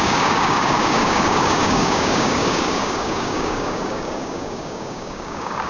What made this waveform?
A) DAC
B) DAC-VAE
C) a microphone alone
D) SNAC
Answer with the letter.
A